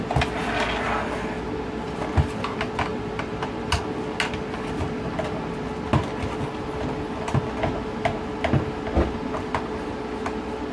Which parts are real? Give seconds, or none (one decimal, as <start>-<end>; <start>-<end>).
0.0-2.9; 3.8-10.7